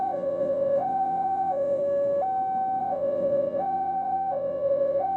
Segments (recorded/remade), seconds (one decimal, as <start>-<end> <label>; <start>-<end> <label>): 0.0-1.8 remade; 1.8-2.8 recorded; 2.8-5.2 remade